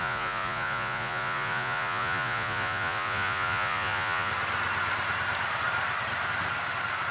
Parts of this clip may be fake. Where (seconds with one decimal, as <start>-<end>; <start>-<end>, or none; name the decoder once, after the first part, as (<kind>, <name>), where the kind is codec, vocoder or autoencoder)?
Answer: 0.0-4.3 (vocoder, Vocos)